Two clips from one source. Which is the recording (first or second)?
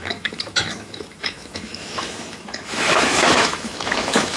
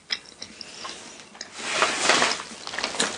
second